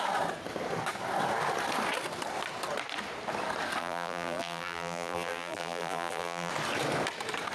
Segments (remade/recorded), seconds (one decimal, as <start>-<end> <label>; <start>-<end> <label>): 0.0-3.8 recorded; 3.8-6.5 remade; 6.5-7.5 recorded